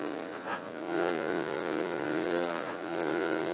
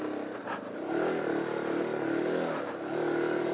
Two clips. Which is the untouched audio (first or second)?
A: second